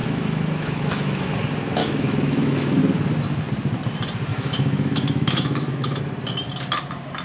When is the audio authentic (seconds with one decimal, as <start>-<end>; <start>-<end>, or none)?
1.3-1.8; 2.8-4.3; 6.0-7.2